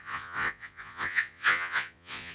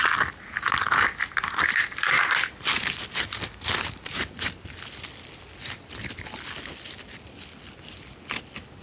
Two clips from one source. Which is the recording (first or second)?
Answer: second